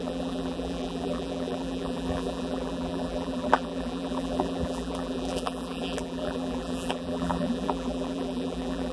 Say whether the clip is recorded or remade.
remade